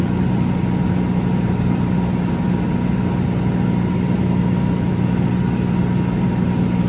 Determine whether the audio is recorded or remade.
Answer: recorded